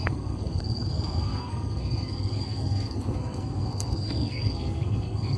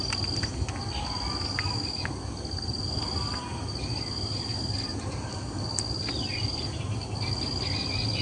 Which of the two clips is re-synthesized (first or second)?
first